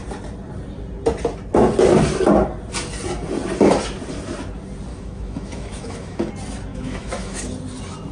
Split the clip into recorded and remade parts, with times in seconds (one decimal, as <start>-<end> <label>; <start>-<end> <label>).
0.0-4.9 recorded; 4.9-6.3 remade; 6.3-6.7 recorded; 6.7-7.4 remade; 7.4-8.1 recorded